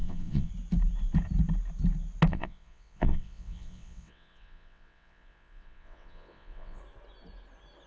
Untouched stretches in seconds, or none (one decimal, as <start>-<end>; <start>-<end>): 0.5-2.3; 6.8-7.9